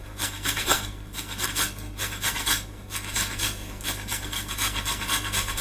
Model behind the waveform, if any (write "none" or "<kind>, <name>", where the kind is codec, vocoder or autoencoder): codec, SNAC